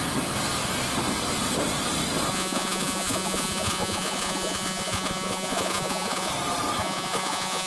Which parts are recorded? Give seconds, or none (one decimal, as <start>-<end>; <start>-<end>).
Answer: 0.0-2.3; 6.3-6.8